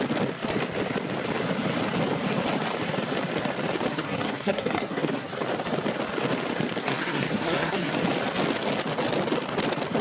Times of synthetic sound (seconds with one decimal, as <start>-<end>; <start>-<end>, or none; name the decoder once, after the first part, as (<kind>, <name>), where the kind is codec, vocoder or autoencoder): 3.9-5.3 (codec, SNAC); 6.8-7.9

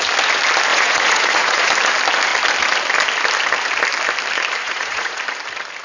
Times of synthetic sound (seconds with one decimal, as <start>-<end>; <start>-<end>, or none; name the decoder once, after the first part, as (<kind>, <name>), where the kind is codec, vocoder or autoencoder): 0.7-1.7 (vocoder, Vocos); 4.6-5.2

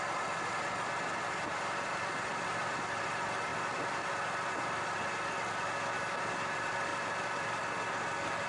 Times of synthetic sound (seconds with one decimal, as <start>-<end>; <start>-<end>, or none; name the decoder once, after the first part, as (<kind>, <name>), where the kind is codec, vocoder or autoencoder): 2.3-3.0 (vocoder, BigVGAN v2); 3.5-4.1; 6.9-7.6

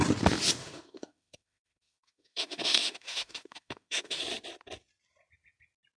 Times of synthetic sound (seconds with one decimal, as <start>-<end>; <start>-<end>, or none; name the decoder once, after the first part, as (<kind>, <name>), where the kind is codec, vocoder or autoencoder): 0.6-4.2 (autoencoder, DAC-VAE)